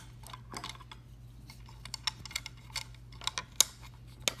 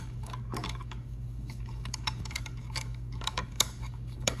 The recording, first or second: first